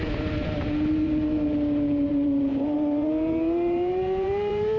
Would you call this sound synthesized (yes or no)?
yes